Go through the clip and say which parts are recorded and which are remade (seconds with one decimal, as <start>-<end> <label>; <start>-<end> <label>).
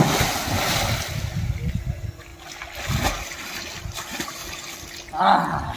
0.0-5.8 recorded